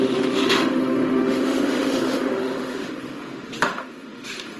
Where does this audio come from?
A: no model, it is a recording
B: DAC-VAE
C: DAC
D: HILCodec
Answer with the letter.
B